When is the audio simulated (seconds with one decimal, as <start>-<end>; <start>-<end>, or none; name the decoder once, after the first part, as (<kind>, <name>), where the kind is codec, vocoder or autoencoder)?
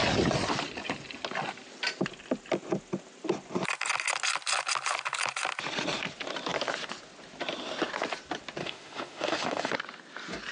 8.6-9.7 (autoencoder, DAC-VAE)